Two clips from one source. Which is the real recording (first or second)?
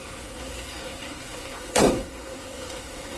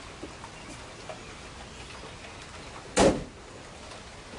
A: second